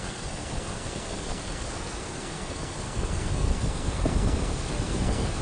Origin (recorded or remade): remade